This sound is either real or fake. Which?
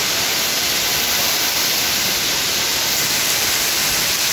real